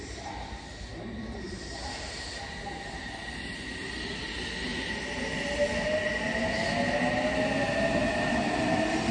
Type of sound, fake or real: real